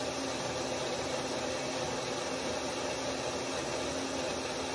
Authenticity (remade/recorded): recorded